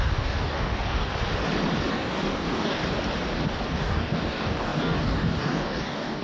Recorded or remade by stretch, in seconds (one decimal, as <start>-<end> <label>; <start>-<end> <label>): 0.0-1.1 remade; 1.1-1.9 recorded; 1.9-2.8 remade; 2.8-3.7 recorded; 3.7-6.2 remade